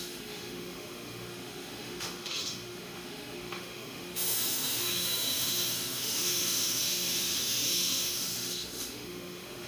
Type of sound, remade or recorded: remade